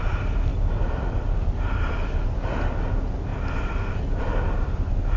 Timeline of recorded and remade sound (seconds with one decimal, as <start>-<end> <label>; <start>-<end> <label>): 0.0-5.2 recorded